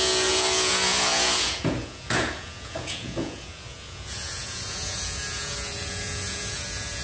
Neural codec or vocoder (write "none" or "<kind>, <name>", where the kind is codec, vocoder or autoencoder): vocoder, Vocos